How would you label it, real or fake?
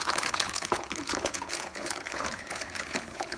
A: fake